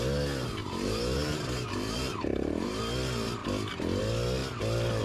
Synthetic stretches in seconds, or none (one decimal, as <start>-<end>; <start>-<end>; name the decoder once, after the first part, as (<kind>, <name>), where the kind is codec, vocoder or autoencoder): 0.6-2.8 (vocoder, BigVGAN v2)